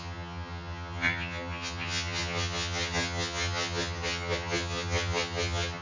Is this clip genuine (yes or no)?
no